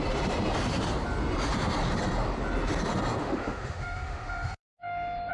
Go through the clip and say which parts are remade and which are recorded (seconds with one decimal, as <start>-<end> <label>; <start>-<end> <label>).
0.0-3.2 recorded; 3.2-5.3 remade